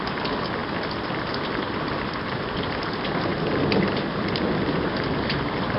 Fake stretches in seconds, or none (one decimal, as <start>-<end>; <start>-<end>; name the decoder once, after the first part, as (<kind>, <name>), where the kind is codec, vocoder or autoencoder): none